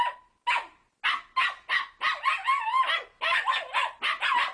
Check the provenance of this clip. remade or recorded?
recorded